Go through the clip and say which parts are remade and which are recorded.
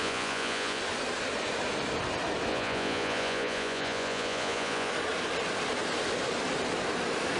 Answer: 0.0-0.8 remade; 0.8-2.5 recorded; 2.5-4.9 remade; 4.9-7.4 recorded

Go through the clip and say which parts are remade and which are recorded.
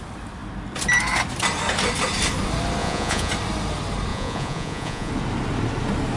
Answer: 0.0-2.8 recorded; 2.8-3.3 remade; 3.3-4.1 recorded; 4.1-5.1 remade; 5.1-6.2 recorded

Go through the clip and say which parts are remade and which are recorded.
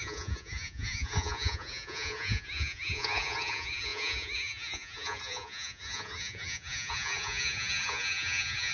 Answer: 0.0-8.7 remade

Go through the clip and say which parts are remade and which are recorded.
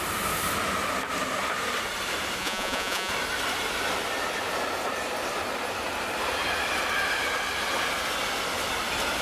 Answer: 0.0-2.4 recorded; 2.4-3.1 remade; 3.1-9.2 recorded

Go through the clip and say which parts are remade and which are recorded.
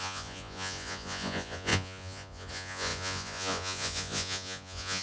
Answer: 0.0-5.0 remade